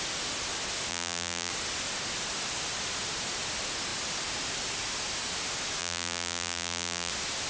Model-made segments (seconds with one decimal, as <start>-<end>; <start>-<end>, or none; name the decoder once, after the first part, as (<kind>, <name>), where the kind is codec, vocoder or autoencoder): 0.9-1.5 (vocoder, BigVGAN v2); 5.8-7.1